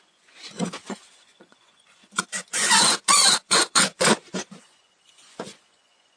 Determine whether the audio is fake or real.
fake